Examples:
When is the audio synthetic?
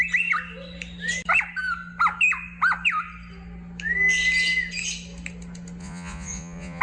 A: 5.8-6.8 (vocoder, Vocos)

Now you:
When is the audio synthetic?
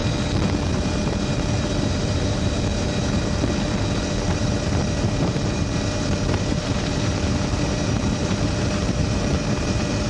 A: 0.7-10.1 (vocoder, BigVGAN v2)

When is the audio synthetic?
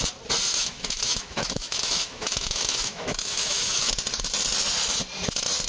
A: 0.5-3.9 (autoencoder, DAC-VAE)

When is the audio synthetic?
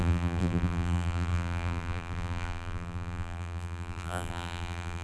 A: 0.0-5.0 (vocoder, BigVGAN v2)